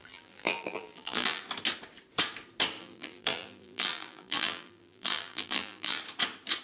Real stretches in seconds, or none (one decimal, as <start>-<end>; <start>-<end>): 1.4-2.8; 6.0-6.6